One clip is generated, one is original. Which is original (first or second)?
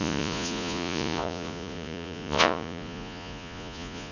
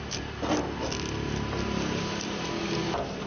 second